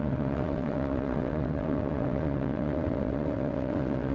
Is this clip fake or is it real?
fake